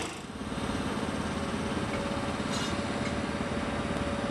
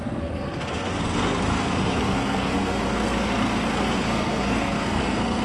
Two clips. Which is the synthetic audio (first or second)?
second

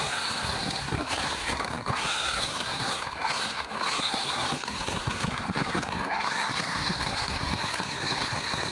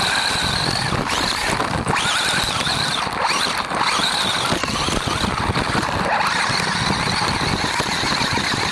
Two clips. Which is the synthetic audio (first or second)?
first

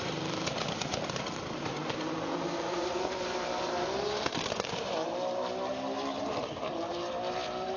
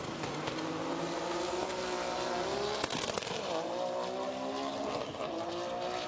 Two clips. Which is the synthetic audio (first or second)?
first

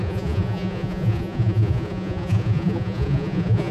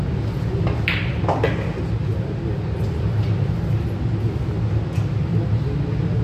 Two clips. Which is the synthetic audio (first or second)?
first